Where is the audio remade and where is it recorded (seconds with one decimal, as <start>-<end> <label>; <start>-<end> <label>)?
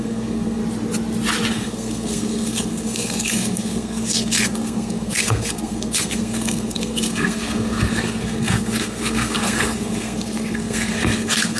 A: 0.0-0.6 remade; 0.6-1.5 recorded; 1.5-11.6 remade